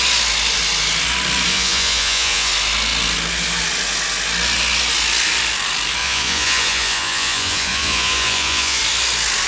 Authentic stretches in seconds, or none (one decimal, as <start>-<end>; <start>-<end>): 0.0-1.5; 2.5-6.0; 8.8-9.5